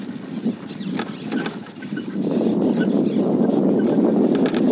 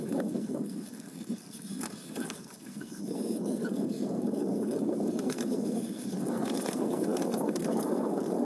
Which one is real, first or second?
first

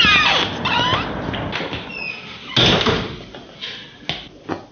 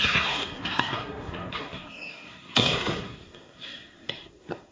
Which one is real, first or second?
first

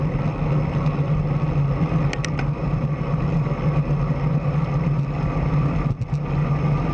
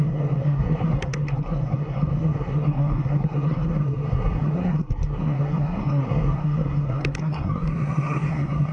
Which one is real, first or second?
first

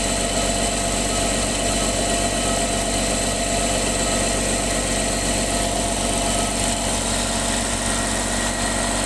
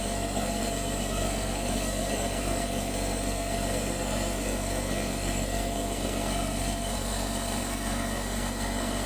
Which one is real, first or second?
first